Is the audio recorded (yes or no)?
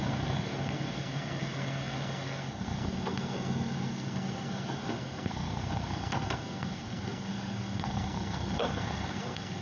no